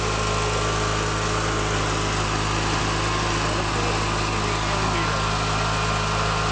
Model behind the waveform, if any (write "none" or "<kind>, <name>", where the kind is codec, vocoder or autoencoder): none